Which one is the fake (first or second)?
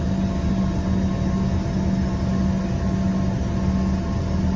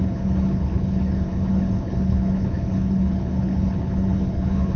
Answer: second